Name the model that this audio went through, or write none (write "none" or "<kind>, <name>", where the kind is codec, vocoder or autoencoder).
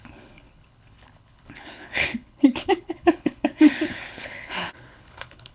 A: codec, HILCodec